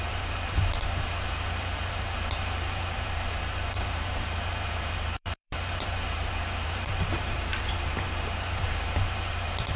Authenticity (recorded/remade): remade